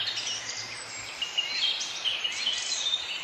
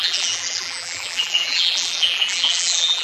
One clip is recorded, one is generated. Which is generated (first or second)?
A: second